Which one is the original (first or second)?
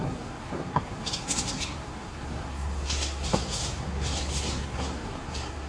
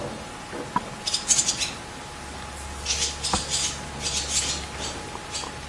second